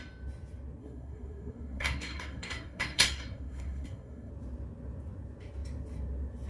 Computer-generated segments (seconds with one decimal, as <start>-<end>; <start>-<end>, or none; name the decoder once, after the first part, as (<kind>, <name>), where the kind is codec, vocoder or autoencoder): 0.8-4.3 (codec, SNAC)